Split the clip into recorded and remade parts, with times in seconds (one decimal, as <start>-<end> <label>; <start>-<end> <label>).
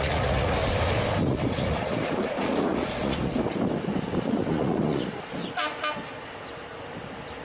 0.0-0.6 remade; 0.6-1.2 recorded; 1.2-3.3 remade; 3.3-4.3 recorded; 4.3-5.4 remade; 5.4-7.4 recorded